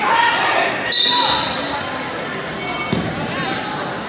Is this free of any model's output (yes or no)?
yes